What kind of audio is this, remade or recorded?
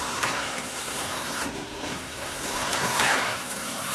remade